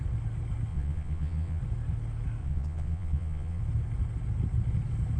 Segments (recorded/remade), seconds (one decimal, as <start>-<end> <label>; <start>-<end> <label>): 0.0-0.7 recorded; 0.7-1.6 remade; 1.6-2.4 recorded; 2.4-3.6 remade; 3.6-5.2 recorded